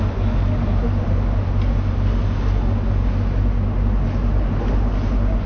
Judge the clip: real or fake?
real